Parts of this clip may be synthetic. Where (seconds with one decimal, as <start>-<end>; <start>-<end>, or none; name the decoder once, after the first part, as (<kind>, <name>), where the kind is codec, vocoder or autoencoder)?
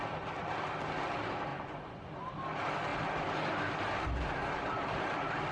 1.5-2.1 (vocoder, Vocos)